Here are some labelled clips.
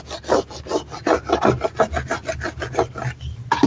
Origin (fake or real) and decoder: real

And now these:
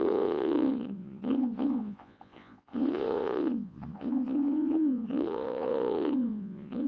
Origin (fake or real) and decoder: fake, vocoder, Vocos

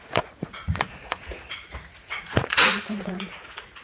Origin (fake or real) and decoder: fake, vocoder, Vocos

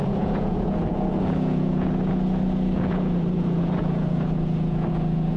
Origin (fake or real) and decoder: fake, vocoder, Vocos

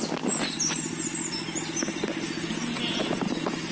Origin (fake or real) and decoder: real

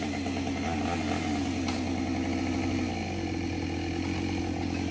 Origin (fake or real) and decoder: real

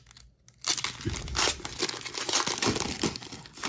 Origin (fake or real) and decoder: real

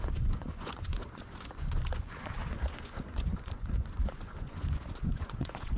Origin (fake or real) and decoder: fake, vocoder, Vocos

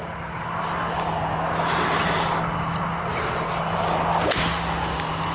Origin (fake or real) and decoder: real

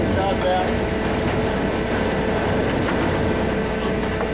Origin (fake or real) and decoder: real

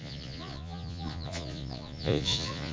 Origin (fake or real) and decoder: fake, vocoder, Vocos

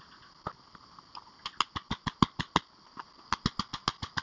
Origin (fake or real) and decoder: real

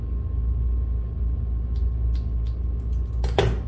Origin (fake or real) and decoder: real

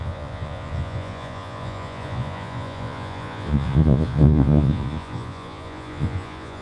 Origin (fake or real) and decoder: fake, vocoder, Vocos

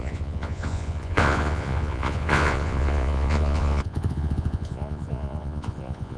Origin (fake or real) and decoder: fake, vocoder, Vocos